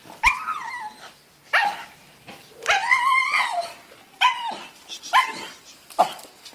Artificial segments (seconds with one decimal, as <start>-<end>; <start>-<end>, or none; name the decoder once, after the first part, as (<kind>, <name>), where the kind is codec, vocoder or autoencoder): 2.8-5.0 (vocoder, BigVGAN v2)